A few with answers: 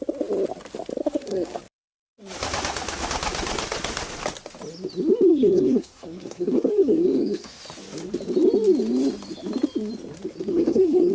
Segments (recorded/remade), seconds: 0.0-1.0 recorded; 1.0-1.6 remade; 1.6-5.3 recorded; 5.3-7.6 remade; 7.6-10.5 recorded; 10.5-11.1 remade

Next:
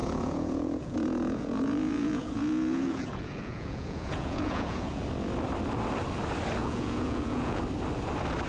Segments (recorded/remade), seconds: 0.0-5.0 remade; 5.0-6.6 recorded; 6.6-7.6 remade; 7.6-8.5 recorded

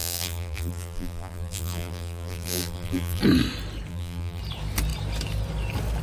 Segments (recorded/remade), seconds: 0.0-3.2 remade; 3.2-3.9 recorded; 3.9-4.4 remade; 4.4-6.0 recorded

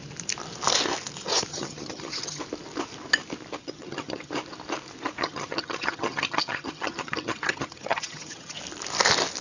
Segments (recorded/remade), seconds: 0.0-1.5 recorded; 1.5-2.4 remade; 2.4-3.6 recorded; 3.6-4.3 remade; 4.3-5.2 recorded; 5.2-8.6 remade; 8.6-9.4 recorded

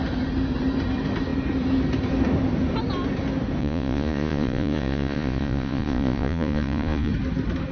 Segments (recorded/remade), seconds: 0.0-3.6 recorded; 3.6-7.1 remade; 7.1-7.7 recorded

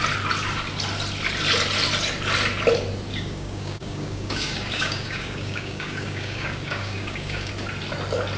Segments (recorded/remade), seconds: 0.0-3.1 recorded; 3.1-7.5 remade; 7.5-8.4 recorded

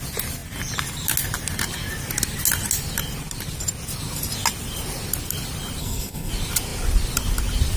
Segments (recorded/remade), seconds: 0.0-5.8 recorded; 5.8-6.3 remade; 6.3-7.8 recorded